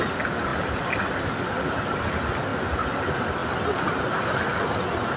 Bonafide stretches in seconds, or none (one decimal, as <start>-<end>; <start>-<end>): 0.0-2.5; 3.0-5.2